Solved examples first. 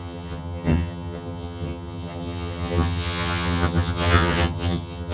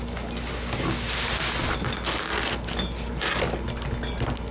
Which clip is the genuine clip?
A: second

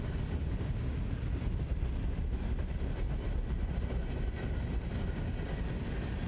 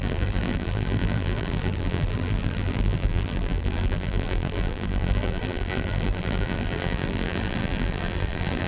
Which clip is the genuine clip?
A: first